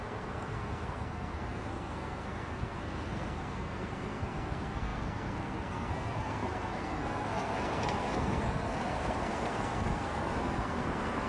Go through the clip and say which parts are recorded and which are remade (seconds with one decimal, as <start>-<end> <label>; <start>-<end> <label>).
0.0-11.3 remade